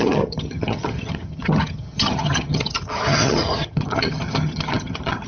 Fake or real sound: fake